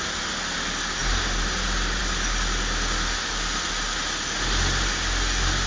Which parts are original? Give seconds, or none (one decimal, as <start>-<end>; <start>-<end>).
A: 0.0-5.7